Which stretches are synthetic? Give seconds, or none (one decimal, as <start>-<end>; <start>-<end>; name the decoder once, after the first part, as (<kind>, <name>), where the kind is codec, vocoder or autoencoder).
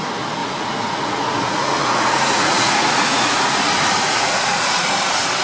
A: 0.4-3.6 (vocoder, Vocos); 4.1-4.9